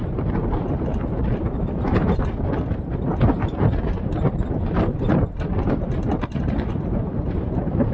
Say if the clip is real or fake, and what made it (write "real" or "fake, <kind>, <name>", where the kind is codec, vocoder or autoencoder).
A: fake, vocoder, BigVGAN v2